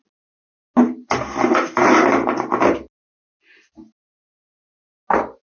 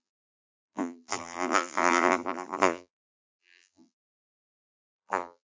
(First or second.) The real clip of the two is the first